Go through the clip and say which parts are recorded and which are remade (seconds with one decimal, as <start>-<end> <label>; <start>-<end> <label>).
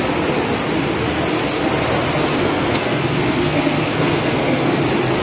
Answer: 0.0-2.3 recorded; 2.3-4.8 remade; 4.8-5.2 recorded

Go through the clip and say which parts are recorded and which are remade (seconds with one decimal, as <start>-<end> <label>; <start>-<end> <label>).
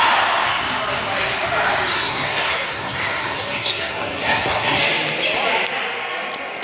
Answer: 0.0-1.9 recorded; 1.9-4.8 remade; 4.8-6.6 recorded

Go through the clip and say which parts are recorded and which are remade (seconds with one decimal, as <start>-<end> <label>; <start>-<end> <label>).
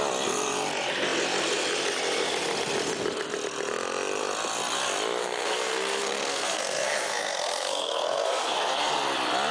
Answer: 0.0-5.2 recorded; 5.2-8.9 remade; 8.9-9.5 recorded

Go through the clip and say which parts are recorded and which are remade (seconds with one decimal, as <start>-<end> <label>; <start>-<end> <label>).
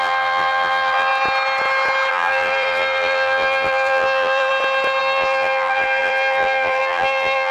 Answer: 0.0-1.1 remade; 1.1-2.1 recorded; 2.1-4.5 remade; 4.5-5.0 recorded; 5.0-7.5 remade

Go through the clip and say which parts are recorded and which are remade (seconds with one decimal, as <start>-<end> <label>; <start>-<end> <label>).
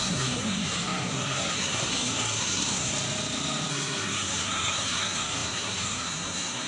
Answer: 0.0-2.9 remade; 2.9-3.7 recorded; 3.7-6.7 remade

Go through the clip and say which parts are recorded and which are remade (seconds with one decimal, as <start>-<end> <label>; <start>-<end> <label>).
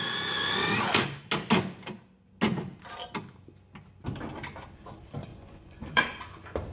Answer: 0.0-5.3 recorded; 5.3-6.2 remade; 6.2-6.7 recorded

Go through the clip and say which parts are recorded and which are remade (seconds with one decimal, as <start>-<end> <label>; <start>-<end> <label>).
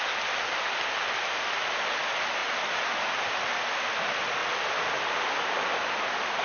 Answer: 0.0-6.4 recorded